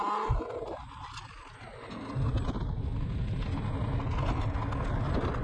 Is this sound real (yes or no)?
yes